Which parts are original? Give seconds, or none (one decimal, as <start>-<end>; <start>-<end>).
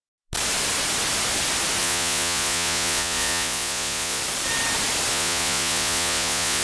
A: 0.0-1.8; 4.2-5.1